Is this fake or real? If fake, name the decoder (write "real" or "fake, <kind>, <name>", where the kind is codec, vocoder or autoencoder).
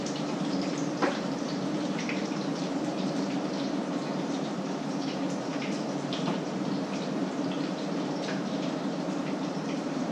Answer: fake, vocoder, BigVGAN v2